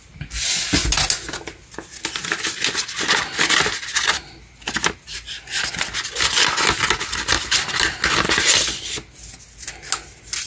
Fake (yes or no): no